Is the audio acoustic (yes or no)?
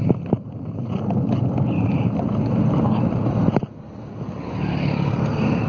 yes